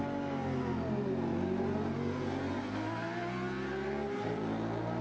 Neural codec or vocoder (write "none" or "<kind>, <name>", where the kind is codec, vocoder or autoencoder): none